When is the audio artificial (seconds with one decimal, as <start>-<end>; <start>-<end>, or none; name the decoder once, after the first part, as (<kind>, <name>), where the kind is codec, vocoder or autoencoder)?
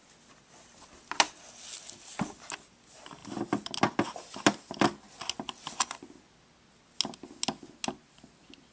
none